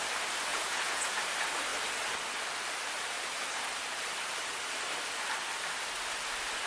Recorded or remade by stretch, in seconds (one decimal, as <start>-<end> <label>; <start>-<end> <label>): 0.0-0.5 recorded; 0.5-1.2 remade; 1.2-6.7 recorded

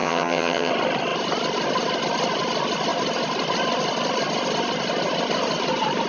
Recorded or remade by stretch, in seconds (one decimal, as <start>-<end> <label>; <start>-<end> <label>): 0.0-0.7 remade; 0.7-6.1 recorded